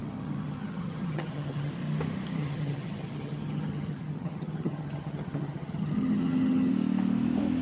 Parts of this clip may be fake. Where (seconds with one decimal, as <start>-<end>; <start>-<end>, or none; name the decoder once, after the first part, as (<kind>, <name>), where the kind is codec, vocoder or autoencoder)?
0.0-1.7 (vocoder, HiFi-GAN); 2.4-6.7